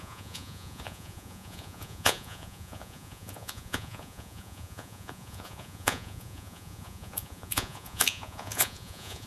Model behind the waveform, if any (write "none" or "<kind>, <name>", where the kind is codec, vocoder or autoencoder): vocoder, Vocos